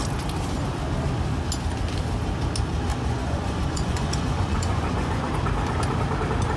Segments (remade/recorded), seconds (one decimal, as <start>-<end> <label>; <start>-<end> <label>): 0.0-2.9 recorded; 2.9-5.3 remade; 5.3-6.6 recorded